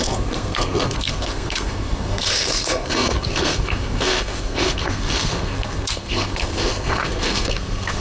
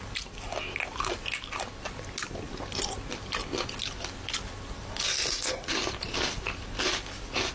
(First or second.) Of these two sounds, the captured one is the second